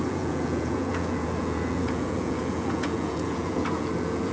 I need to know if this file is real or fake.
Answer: fake